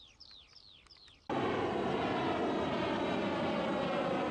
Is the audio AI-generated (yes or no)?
no